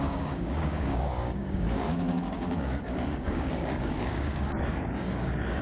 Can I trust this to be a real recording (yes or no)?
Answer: no